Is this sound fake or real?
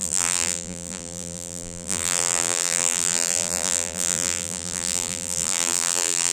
fake